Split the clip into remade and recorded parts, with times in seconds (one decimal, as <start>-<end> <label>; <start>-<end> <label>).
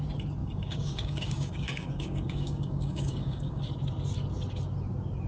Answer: 0.0-0.4 recorded; 0.4-3.6 remade; 3.6-5.3 recorded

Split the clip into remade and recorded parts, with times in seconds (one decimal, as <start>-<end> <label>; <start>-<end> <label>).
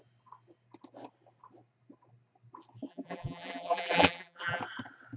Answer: 0.0-2.9 recorded; 2.9-4.6 remade; 4.6-5.2 recorded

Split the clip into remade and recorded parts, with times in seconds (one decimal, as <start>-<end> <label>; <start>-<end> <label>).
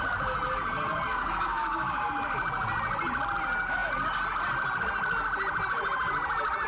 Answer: 0.0-1.1 recorded; 1.1-2.1 remade; 2.1-6.7 recorded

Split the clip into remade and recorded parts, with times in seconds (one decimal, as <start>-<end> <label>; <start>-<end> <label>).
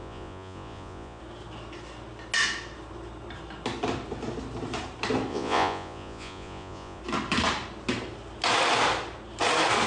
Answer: 0.0-1.2 remade; 1.2-5.3 recorded; 5.3-7.0 remade; 7.0-9.9 recorded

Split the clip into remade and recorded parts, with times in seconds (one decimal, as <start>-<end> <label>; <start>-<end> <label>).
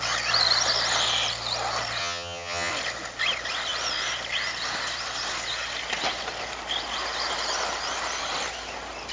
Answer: 0.0-2.0 recorded; 2.0-2.7 remade; 2.7-9.1 recorded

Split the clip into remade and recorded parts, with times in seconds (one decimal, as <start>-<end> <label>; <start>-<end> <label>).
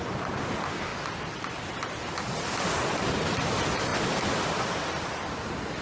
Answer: 0.0-5.8 recorded